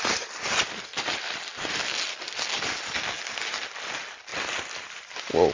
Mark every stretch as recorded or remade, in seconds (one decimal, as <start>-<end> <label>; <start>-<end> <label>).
0.0-4.3 recorded; 4.3-5.5 remade